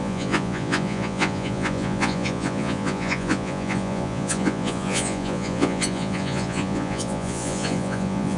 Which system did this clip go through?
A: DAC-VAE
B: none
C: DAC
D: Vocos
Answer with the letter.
D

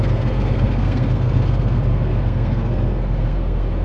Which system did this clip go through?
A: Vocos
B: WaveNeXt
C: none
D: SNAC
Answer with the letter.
D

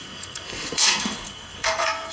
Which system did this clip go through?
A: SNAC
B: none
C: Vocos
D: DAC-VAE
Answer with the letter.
A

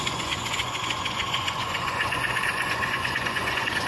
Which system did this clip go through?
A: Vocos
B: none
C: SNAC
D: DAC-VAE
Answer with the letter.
A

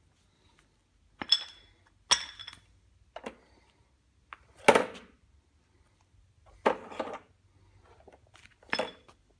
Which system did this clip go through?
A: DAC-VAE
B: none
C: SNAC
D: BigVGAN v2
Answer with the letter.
B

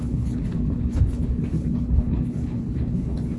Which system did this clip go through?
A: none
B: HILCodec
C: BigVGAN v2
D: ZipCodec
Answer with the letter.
B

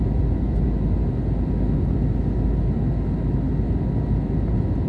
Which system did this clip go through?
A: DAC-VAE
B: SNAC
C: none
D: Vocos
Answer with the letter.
C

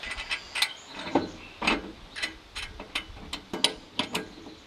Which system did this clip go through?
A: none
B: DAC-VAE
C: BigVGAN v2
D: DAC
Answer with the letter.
A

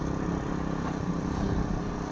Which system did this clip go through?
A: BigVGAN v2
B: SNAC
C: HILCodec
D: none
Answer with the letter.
D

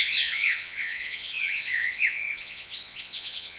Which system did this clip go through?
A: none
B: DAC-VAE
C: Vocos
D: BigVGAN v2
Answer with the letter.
C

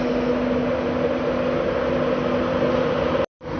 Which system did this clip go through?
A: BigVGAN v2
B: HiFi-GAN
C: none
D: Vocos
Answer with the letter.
C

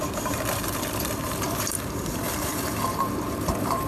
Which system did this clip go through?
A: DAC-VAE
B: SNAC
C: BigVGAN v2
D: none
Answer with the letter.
C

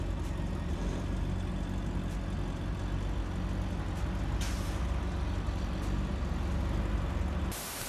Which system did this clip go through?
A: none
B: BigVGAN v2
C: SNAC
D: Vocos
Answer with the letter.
A